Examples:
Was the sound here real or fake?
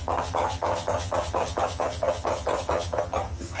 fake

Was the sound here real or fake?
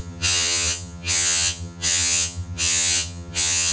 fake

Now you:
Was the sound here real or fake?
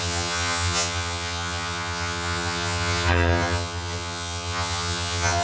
fake